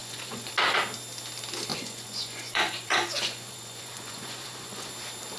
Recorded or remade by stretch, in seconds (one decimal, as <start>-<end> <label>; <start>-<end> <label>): 0.0-0.5 remade; 0.5-1.7 recorded; 1.7-4.9 remade; 4.9-5.4 recorded